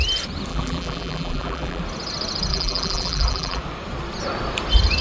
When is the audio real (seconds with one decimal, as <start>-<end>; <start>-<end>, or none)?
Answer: 0.0-0.5; 1.8-2.5; 3.6-5.0